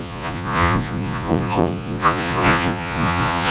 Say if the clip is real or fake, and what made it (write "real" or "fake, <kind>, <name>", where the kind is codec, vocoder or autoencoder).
fake, vocoder, Vocos